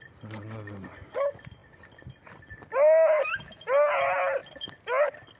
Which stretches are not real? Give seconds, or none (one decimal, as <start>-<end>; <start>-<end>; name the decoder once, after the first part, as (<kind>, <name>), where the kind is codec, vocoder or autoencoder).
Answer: none

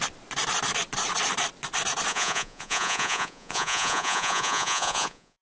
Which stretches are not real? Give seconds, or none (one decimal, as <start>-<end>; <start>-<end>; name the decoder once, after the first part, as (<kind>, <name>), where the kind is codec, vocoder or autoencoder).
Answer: 2.1-5.4 (vocoder, Vocos)

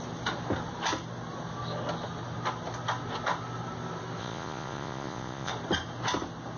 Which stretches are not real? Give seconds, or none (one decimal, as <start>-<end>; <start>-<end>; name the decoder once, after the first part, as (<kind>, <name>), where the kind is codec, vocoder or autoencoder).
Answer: 4.2-5.5 (vocoder, Vocos)

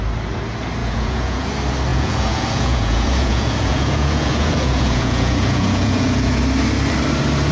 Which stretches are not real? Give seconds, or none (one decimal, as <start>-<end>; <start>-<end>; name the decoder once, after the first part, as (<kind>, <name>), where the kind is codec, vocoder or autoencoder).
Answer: 0.8-1.5 (vocoder, Vocos); 1.9-6.4